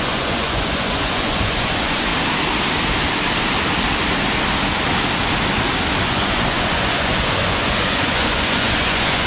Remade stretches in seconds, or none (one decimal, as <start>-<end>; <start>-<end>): 0.0-2.1; 6.0-9.3